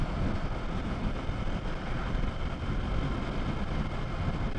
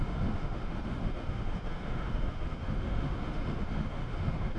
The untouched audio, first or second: first